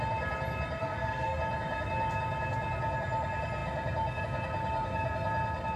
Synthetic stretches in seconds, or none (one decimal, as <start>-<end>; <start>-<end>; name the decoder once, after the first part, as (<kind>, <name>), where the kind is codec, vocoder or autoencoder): 0.8-1.4 (codec, SNAC)